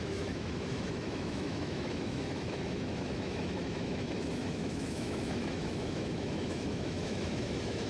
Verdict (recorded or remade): remade